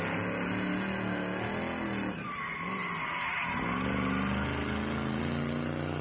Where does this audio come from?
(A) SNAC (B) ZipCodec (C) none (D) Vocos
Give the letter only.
C